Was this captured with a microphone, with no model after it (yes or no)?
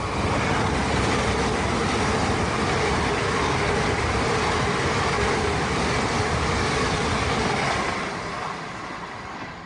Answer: yes